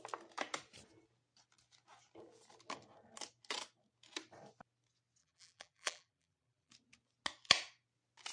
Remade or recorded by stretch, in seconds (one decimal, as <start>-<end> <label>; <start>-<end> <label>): 0.0-5.2 recorded; 5.2-6.7 remade; 6.7-8.3 recorded